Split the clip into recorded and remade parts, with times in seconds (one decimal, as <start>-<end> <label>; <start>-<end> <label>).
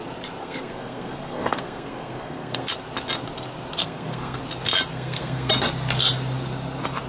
0.0-0.4 recorded; 0.4-2.7 remade; 2.7-3.8 recorded; 3.8-4.4 remade; 4.4-4.9 recorded; 4.9-5.5 remade; 5.5-7.1 recorded